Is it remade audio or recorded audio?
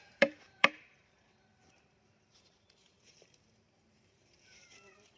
remade